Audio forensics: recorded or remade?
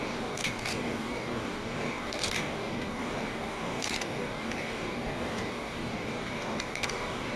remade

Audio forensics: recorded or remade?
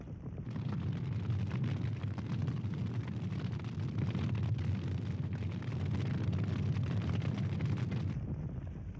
recorded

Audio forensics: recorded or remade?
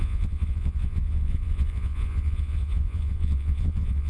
remade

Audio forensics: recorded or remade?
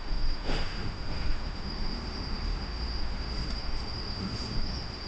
remade